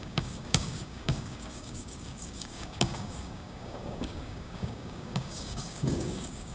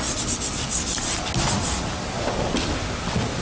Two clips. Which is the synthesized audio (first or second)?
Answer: first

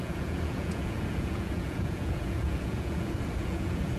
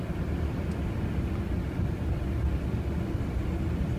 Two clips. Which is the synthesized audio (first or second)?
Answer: first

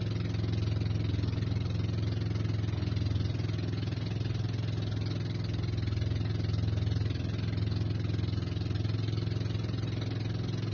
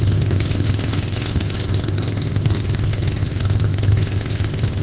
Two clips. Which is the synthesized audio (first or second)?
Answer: second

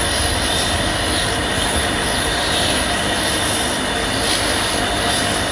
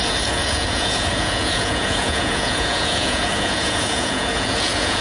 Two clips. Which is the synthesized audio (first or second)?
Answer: second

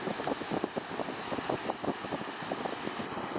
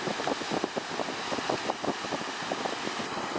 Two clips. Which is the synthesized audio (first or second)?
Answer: first